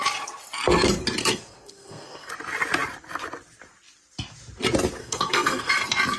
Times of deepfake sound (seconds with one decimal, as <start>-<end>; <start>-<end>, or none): 1.2-2.3; 5.0-5.7

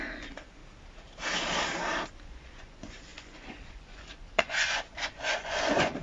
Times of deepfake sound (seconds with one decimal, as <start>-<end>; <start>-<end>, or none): 0.0-0.6; 2.2-6.0

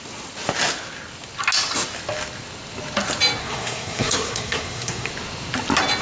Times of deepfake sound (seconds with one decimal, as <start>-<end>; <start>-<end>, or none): 3.4-5.1

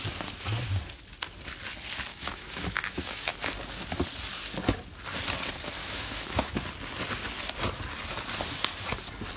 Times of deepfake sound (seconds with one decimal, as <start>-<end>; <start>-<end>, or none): 2.1-3.3; 5.8-6.5